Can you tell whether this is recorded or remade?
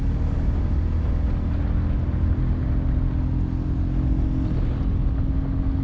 recorded